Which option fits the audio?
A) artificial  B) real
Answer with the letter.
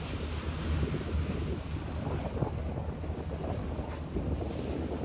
B